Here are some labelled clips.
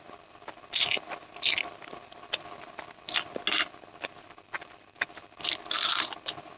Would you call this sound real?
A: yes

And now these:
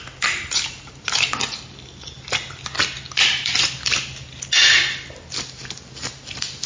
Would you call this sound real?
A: yes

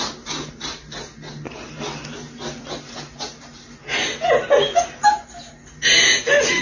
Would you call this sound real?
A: yes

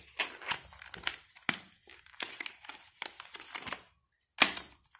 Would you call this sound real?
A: yes